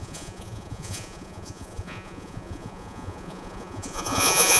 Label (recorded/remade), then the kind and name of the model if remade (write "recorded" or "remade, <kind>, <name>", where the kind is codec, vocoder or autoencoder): remade, vocoder, Vocos